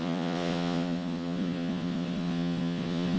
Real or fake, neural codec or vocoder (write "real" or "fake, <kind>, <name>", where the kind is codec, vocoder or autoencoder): fake, vocoder, Vocos